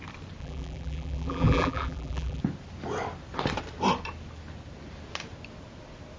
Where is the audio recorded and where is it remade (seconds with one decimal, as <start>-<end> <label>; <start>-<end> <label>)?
0.0-0.4 recorded; 0.4-2.4 remade; 2.4-6.2 recorded